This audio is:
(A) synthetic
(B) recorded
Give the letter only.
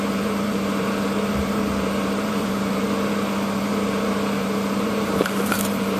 A